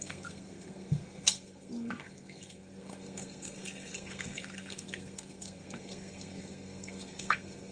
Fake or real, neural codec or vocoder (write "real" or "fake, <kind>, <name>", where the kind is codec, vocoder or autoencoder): fake, codec, SNAC